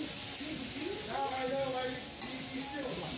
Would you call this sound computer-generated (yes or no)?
no